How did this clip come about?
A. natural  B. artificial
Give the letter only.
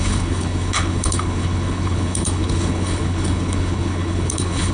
B